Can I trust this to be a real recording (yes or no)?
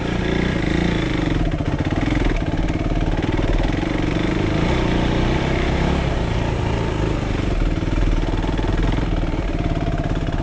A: no